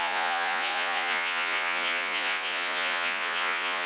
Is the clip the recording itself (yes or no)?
no